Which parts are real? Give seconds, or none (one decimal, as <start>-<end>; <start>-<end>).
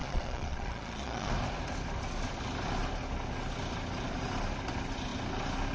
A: 1.3-5.7